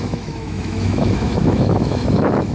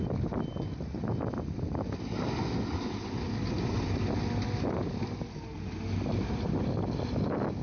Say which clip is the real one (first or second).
second